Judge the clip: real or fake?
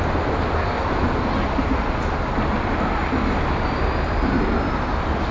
real